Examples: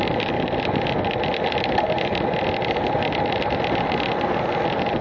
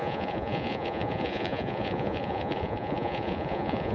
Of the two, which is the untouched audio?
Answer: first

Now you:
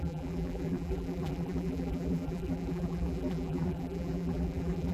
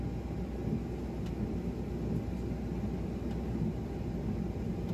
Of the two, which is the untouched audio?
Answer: second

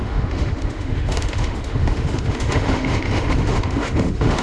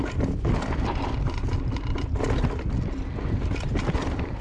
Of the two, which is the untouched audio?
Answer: second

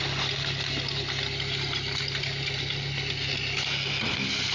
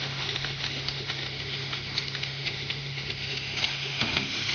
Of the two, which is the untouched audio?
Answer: first